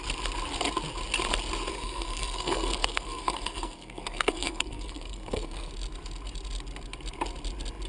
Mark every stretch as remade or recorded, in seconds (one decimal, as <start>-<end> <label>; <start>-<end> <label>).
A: 0.0-1.7 recorded; 1.7-5.7 remade; 5.7-7.9 recorded